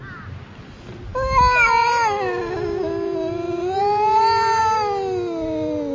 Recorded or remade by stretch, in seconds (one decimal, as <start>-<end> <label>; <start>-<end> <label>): 0.0-5.9 recorded